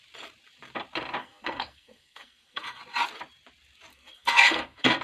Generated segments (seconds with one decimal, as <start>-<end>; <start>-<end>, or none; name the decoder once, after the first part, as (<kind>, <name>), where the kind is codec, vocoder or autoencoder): 1.2-2.8 (codec, SNAC); 3.9-5.0